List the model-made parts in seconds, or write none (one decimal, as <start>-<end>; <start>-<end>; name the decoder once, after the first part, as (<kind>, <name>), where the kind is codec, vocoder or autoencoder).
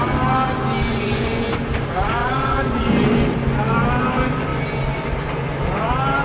0.9-1.5 (vocoder, Vocos); 2.2-2.9